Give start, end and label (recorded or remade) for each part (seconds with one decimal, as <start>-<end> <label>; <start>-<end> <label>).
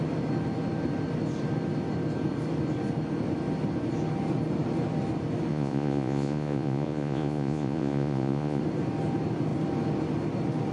0.0-5.5 recorded; 5.5-8.6 remade; 8.6-10.7 recorded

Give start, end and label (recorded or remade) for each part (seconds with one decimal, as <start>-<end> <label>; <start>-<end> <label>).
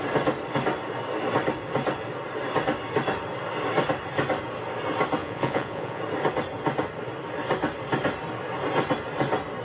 0.0-5.2 recorded; 5.2-6.0 remade; 6.0-9.6 recorded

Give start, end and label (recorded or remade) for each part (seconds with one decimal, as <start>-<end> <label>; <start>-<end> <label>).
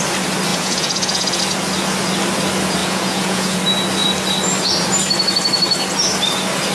0.0-0.5 recorded; 0.5-1.4 remade; 1.4-2.8 recorded; 2.8-3.6 remade; 3.6-6.7 recorded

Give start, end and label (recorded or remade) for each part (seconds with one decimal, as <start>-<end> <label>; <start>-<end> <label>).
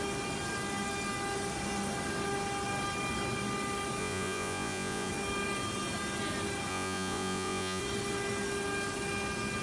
0.0-4.0 recorded; 4.0-5.1 remade; 5.1-6.7 recorded; 6.7-7.8 remade; 7.8-9.6 recorded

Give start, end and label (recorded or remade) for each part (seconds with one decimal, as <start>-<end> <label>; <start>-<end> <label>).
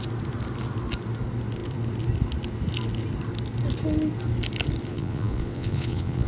0.0-4.9 recorded; 4.9-6.3 remade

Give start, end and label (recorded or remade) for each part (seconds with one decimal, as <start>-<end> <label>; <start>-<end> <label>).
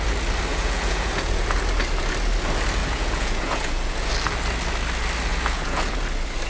0.0-0.5 recorded; 0.5-1.6 remade; 1.6-2.8 recorded; 2.8-4.1 remade; 4.1-5.3 recorded; 5.3-5.9 remade; 5.9-6.5 recorded